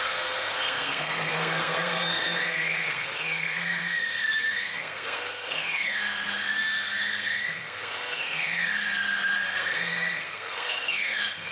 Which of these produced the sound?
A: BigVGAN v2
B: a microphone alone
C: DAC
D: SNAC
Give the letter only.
D